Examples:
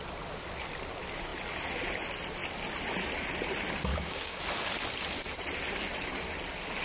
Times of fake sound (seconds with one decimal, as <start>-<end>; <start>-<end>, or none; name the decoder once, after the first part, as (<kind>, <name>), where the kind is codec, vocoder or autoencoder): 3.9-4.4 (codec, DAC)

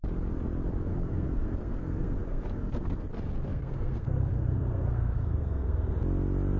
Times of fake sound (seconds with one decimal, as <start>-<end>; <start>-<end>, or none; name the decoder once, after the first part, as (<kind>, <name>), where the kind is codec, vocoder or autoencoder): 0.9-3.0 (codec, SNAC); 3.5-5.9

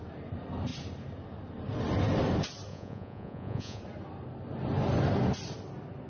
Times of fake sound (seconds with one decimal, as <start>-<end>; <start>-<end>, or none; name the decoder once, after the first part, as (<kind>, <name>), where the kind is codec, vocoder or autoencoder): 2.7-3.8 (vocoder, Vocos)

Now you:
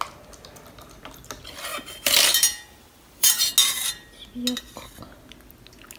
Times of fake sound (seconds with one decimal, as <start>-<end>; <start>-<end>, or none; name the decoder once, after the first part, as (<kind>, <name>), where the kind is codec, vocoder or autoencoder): 1.7-3.4 (vocoder, BigVGAN v2)

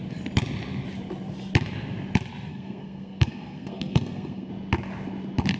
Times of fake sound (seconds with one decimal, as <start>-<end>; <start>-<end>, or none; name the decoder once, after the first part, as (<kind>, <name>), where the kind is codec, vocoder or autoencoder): 2.5-4.5 (codec, SNAC)